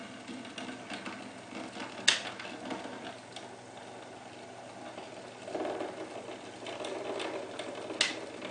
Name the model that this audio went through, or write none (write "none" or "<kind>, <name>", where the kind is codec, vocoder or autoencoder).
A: none